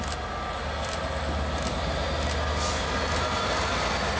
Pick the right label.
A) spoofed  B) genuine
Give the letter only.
B